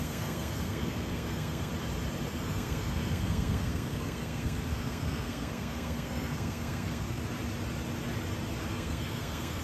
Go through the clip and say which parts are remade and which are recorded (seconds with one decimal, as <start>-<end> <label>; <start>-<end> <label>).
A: 0.0-1.7 remade; 1.7-2.3 recorded; 2.3-7.2 remade; 7.2-8.7 recorded; 8.7-9.6 remade